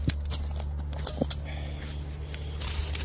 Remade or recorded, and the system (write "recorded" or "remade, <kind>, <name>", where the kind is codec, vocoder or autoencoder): recorded